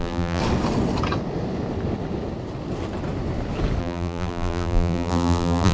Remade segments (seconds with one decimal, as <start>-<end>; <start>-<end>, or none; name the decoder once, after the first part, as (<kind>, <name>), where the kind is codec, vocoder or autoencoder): 0.0-0.4 (vocoder, BigVGAN v2); 3.8-5.7